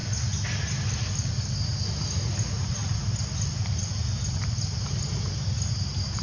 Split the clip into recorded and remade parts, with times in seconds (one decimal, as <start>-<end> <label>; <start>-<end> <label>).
0.0-6.2 recorded